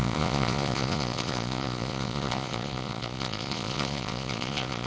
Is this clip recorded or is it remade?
remade